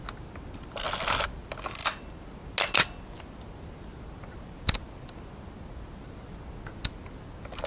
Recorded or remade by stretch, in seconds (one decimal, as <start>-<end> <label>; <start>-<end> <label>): 0.0-7.7 recorded

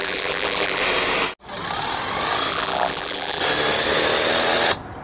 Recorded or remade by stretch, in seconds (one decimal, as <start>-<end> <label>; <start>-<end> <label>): 0.0-0.8 remade; 0.8-2.5 recorded; 2.5-3.4 remade; 3.4-5.0 recorded

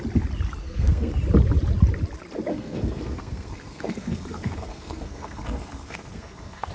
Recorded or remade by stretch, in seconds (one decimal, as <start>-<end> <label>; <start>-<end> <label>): 0.0-0.6 recorded; 0.6-1.1 remade; 1.1-2.5 recorded; 2.5-6.7 remade

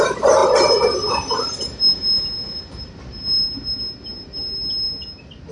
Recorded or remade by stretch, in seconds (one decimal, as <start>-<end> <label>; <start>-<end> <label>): 0.0-5.5 recorded

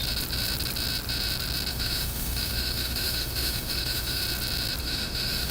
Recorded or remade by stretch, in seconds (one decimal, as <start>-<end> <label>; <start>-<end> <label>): 0.0-1.7 recorded; 1.7-4.2 remade; 4.2-4.8 recorded; 4.8-5.5 remade

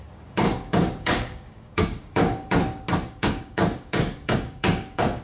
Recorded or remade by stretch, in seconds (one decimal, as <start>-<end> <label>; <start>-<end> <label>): 0.0-2.6 remade; 2.6-3.1 recorded; 3.1-5.2 remade

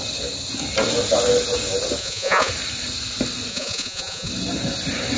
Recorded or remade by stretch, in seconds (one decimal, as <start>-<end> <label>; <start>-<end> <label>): 0.0-2.0 recorded; 2.0-2.5 remade; 2.5-3.5 recorded; 3.5-4.3 remade; 4.3-5.2 recorded

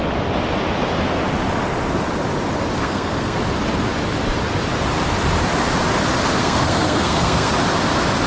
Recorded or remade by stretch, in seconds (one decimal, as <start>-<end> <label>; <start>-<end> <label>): 0.0-2.8 recorded; 2.8-3.4 remade; 3.4-6.4 recorded; 6.4-7.5 remade; 7.5-8.3 recorded